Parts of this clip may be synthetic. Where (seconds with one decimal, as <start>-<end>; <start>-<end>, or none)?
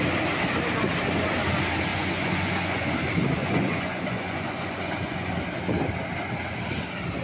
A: 1.9-2.9; 3.4-5.3